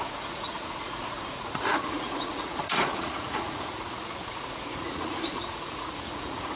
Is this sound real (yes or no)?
no